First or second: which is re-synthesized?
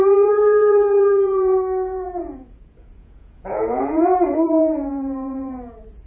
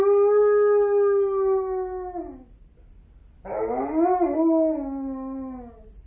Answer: first